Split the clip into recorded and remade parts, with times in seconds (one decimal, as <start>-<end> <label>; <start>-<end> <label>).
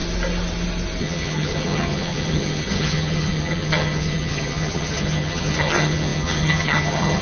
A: 0.0-1.0 recorded; 1.0-7.2 remade